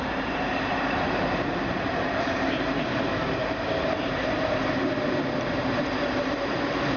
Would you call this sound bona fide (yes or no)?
no